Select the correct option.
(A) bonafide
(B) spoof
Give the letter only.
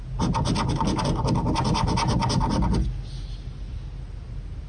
A